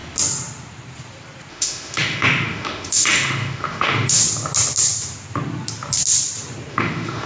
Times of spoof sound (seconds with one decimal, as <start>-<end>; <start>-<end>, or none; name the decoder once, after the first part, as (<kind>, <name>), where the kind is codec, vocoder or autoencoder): 1.5-4.2 (autoencoder, DAC-VAE); 6.7-7.3